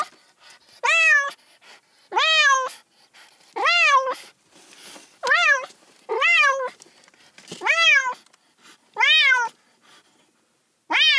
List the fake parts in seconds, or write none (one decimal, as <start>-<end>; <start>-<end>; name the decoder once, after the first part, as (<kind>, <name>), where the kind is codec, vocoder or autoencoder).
none